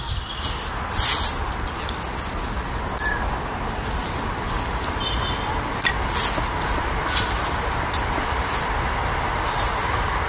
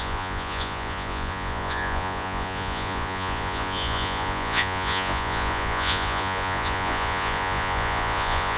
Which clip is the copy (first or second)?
second